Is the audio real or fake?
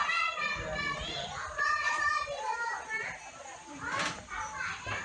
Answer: real